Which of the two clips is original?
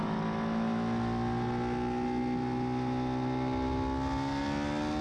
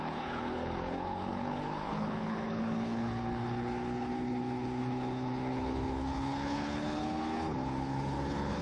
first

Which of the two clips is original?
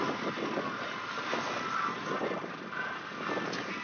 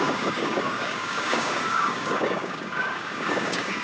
first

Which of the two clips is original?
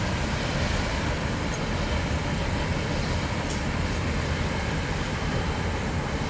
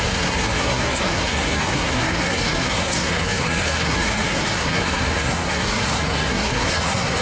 first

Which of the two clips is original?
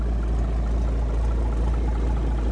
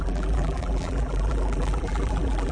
first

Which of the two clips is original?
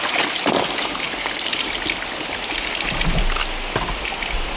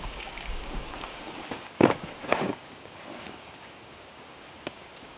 first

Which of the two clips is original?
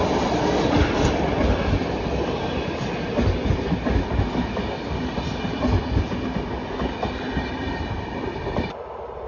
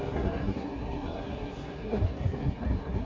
first